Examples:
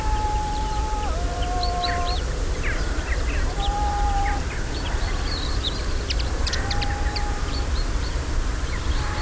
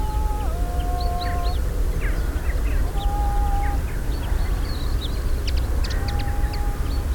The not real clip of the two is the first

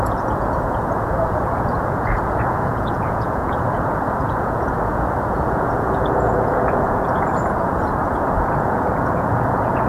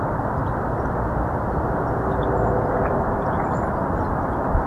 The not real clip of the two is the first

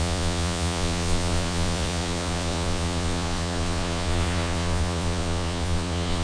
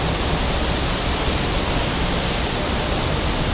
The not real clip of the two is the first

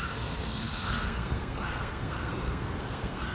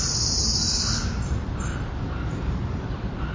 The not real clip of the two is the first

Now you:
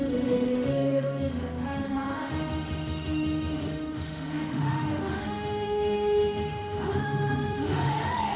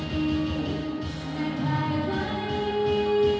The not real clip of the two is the first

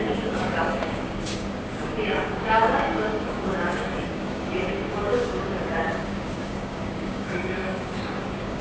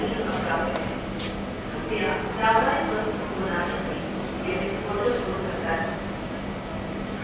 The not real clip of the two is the first